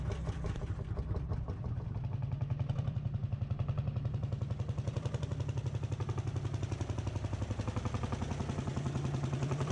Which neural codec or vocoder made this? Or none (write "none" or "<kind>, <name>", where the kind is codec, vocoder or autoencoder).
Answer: none